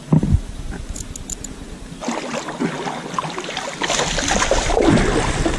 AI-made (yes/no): no